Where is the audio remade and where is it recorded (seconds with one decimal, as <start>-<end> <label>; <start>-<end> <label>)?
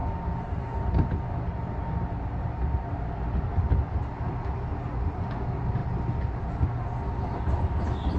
0.0-8.2 recorded